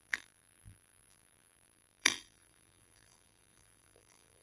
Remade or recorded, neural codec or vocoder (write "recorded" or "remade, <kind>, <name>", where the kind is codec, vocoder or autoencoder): remade, vocoder, BigVGAN v2